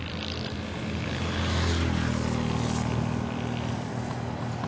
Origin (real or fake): real